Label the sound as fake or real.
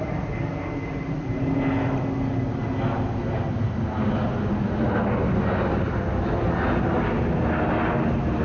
real